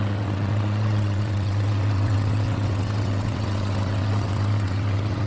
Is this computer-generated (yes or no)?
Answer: yes